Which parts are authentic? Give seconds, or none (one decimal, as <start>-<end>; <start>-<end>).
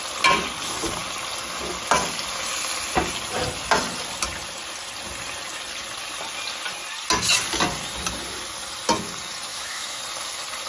0.0-9.5; 10.0-10.7